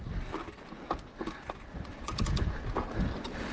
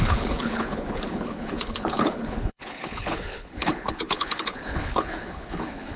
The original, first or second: first